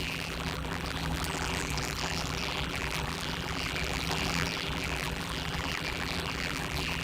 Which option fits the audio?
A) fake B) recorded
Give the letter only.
A